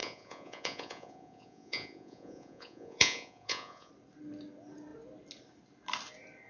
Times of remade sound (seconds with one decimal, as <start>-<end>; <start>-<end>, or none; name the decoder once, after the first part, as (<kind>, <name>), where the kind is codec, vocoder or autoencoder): 0.0-3.9 (vocoder, Vocos)